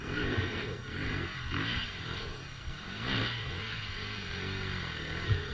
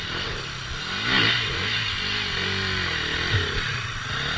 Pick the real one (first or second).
second